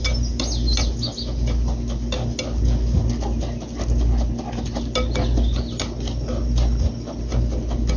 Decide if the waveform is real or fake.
real